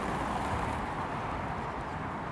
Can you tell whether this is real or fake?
real